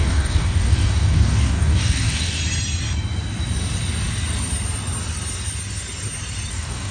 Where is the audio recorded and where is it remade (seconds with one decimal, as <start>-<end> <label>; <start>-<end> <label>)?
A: 0.0-2.4 remade; 2.4-6.5 recorded; 6.5-6.9 remade